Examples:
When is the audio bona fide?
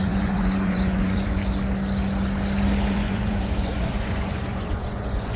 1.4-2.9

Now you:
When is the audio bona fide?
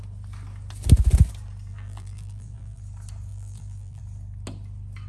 0.0-1.7; 2.8-3.3; 4.0-5.1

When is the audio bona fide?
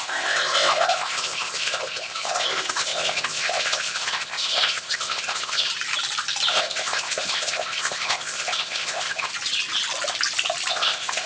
5.7-6.5; 9.3-10.7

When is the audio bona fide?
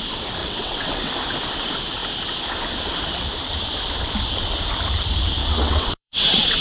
0.0-0.4; 1.1-5.4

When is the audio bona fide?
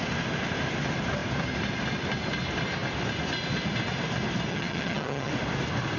0.0-4.5; 5.3-6.0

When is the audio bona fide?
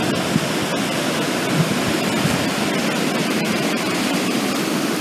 0.0-3.2; 4.5-5.0